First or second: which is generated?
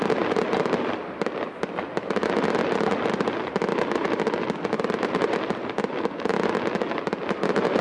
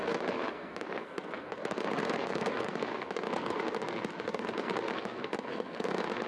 second